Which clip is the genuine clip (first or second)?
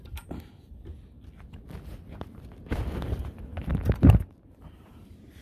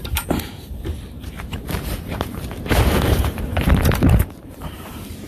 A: first